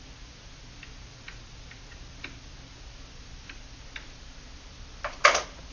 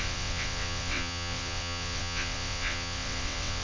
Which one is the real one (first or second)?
first